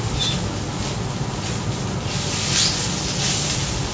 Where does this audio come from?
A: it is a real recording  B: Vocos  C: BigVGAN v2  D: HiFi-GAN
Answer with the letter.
A